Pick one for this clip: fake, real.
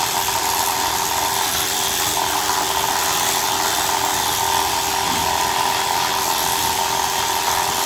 real